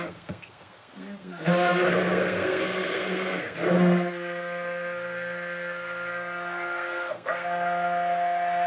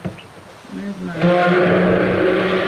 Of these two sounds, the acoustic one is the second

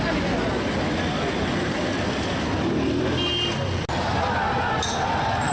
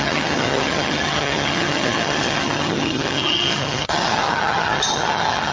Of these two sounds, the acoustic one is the first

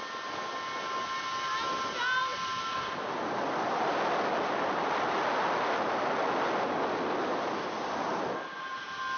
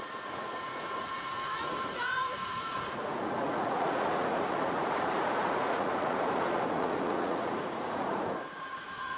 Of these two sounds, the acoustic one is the first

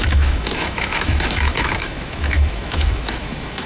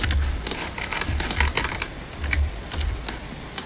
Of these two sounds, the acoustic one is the second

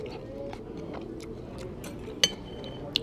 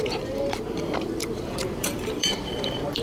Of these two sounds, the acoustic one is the first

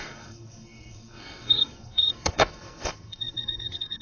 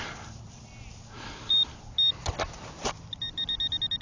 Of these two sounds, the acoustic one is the second